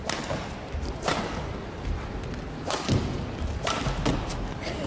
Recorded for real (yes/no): yes